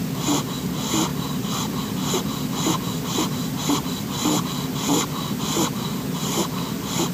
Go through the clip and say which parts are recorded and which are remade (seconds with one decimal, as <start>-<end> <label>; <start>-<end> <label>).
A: 0.0-1.1 recorded; 1.1-5.4 remade; 5.4-7.1 recorded